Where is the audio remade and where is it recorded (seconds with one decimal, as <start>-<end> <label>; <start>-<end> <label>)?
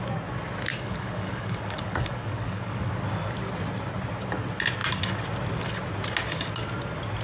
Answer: 0.0-0.7 recorded; 0.7-2.9 remade; 2.9-7.2 recorded